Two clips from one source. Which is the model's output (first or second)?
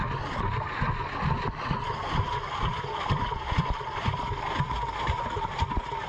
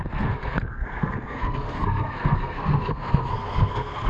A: second